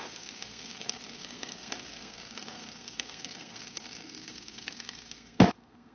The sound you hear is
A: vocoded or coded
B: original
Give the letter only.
A